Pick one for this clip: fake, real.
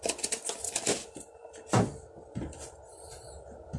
real